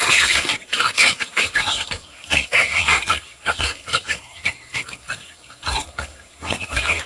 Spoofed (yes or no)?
yes